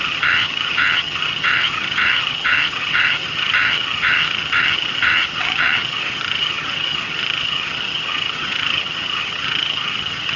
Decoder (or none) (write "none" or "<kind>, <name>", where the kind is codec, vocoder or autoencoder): vocoder, HiFi-GAN